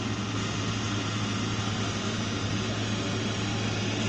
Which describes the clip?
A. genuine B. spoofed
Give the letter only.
A